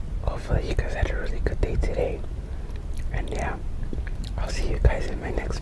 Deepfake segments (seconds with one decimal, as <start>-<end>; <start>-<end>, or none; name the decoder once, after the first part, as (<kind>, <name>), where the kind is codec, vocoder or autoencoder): none